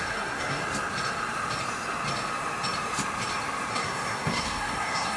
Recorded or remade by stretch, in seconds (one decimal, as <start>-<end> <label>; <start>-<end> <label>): 0.0-0.6 remade; 0.6-3.7 recorded; 3.7-5.2 remade